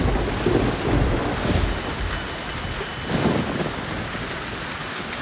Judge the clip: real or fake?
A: real